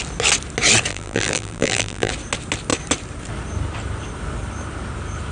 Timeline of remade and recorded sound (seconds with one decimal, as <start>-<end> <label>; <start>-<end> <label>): 0.0-0.9 recorded; 0.9-2.1 remade; 2.1-5.3 recorded